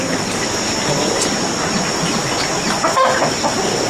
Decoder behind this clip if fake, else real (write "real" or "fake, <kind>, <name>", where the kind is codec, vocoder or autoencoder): real